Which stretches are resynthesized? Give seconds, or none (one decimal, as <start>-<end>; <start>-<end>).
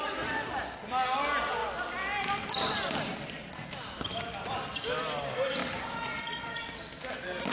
none